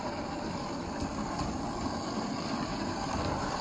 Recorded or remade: remade